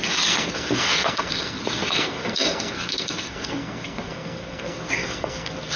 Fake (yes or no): yes